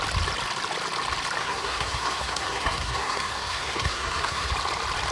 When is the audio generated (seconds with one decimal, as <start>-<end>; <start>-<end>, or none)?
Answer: 1.4-4.5